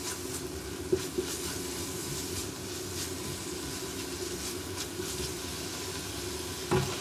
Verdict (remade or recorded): recorded